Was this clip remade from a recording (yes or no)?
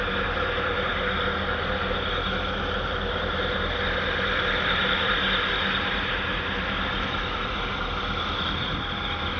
no